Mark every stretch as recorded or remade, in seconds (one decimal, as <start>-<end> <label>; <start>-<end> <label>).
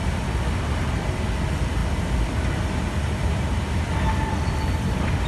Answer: 0.0-5.3 recorded